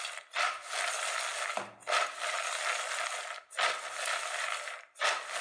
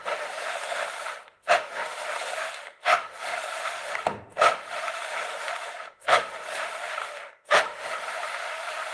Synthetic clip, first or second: second